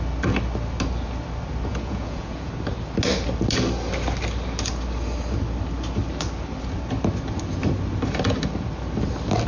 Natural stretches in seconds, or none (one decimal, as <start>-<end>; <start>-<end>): 0.0-1.7; 2.5-9.5